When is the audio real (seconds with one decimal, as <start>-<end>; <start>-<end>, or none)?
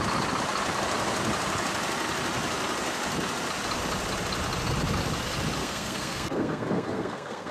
0.0-5.6